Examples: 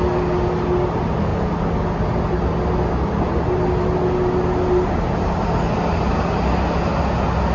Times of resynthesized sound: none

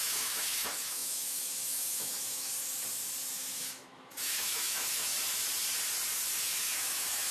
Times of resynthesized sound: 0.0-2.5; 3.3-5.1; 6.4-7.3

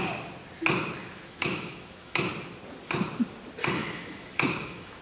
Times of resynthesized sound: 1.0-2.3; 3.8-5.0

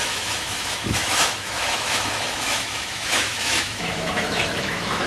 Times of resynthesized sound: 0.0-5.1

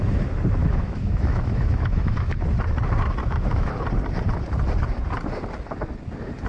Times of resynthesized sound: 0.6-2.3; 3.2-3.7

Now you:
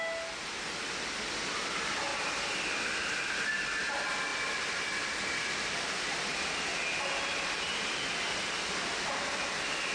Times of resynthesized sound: none

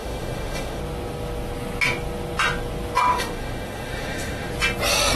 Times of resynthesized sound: 0.0-0.8; 3.1-4.5